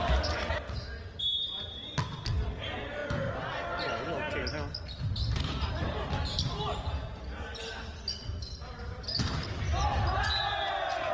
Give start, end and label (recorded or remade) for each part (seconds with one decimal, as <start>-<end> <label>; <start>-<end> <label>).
0.0-11.1 recorded